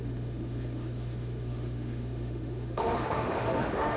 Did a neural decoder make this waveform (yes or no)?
yes